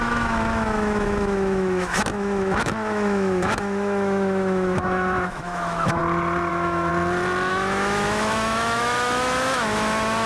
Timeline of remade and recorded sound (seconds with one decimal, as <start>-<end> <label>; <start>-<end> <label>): 0.0-6.0 remade; 6.0-6.5 recorded; 6.5-6.9 remade; 6.9-7.5 recorded; 7.5-10.3 remade